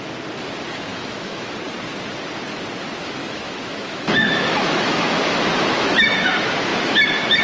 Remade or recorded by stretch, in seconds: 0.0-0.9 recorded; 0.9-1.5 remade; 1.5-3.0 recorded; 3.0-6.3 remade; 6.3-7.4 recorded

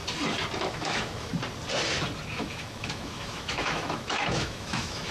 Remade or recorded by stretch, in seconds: 0.0-0.7 recorded; 0.7-1.3 remade; 1.3-2.4 recorded; 2.4-5.1 remade

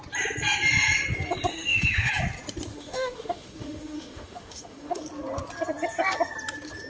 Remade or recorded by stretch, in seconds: 0.0-1.5 recorded; 1.5-2.1 remade; 2.1-2.7 recorded; 2.7-5.0 remade; 5.0-6.9 recorded

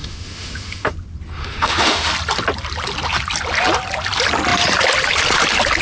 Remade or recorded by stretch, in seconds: 0.0-0.9 remade; 0.9-1.4 recorded; 1.4-2.1 remade; 2.1-5.8 recorded

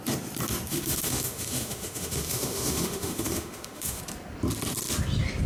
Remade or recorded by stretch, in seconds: 0.0-0.7 recorded; 0.7-4.0 remade; 4.0-5.5 recorded

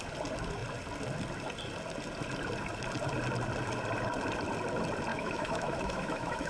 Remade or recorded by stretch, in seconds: 0.0-5.1 recorded; 5.1-6.5 remade

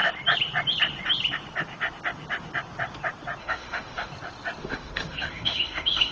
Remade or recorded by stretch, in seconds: 0.0-3.4 recorded; 3.4-4.1 remade; 4.1-4.6 recorded; 4.6-6.1 remade